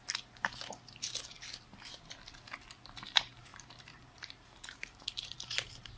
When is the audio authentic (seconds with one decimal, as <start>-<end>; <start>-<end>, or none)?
0.0-3.5